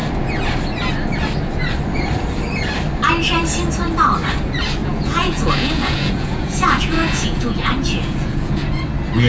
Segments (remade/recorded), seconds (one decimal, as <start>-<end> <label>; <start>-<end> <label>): 0.0-4.8 recorded; 4.8-8.8 remade; 8.8-9.3 recorded